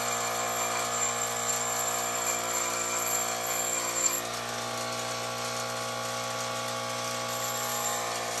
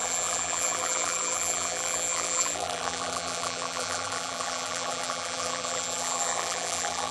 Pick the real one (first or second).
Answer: first